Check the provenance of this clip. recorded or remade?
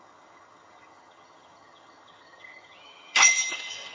remade